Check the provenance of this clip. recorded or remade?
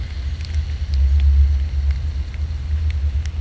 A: recorded